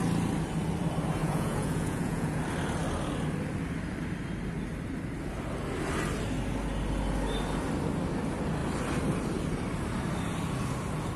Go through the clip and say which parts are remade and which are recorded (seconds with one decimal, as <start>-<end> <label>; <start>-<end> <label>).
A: 0.0-1.2 recorded; 1.2-2.4 remade; 2.4-11.2 recorded